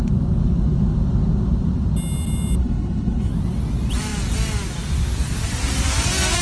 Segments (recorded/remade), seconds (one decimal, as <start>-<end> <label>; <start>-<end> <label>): 0.0-2.6 recorded; 2.6-3.3 remade; 3.3-6.4 recorded